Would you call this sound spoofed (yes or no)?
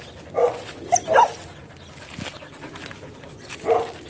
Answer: no